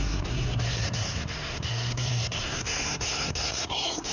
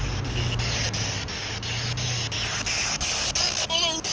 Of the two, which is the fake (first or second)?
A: first